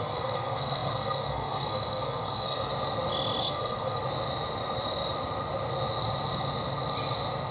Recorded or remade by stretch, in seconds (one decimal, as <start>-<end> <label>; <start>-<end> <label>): 0.0-2.7 remade; 2.7-3.4 recorded; 3.4-4.0 remade; 4.0-7.5 recorded